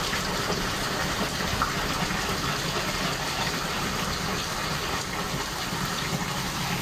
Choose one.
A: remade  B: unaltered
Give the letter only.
A